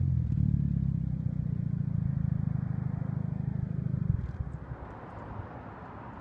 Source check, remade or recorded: recorded